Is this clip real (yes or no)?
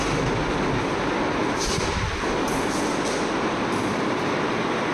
yes